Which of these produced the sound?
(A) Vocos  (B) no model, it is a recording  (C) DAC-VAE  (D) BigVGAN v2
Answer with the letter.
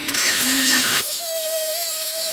C